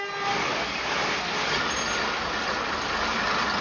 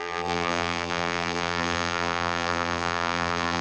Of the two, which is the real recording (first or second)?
first